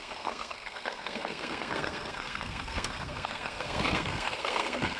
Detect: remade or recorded remade